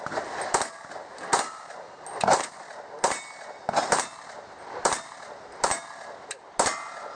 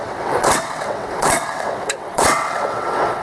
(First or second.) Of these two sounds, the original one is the first